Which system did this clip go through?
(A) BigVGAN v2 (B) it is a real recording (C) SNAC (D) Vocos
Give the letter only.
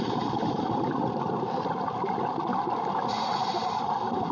A